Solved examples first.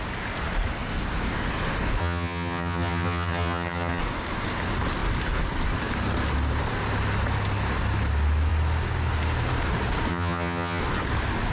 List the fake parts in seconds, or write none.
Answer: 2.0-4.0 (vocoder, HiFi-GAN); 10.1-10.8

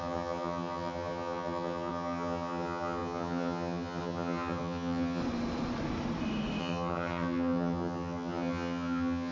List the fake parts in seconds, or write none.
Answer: 0.0-5.2 (vocoder, HiFi-GAN); 6.6-9.3

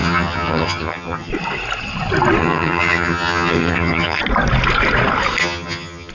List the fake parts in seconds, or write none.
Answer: 0.0-1.3 (vocoder, HiFi-GAN); 2.4-4.2; 5.4-6.1

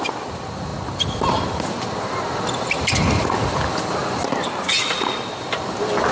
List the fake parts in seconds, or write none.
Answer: none

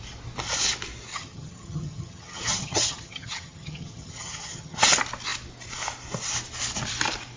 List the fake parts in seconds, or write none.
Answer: 1.1-4.8 (vocoder, HiFi-GAN)

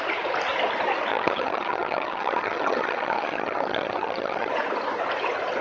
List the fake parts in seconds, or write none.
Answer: 1.1-4.5 (vocoder, HiFi-GAN)

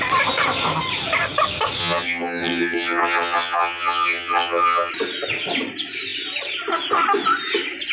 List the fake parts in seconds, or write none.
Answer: 1.8-4.9 (vocoder, HiFi-GAN)